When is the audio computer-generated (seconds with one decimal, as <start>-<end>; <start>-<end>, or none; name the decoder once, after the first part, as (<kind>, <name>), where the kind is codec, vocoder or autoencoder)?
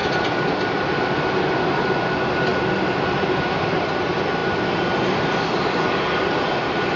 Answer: none